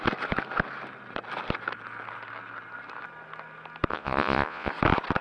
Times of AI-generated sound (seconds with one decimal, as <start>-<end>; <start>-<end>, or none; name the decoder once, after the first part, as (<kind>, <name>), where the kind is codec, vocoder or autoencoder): 3.9-4.7 (vocoder, Vocos)